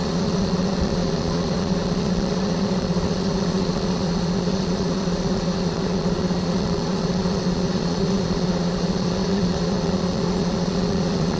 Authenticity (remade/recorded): remade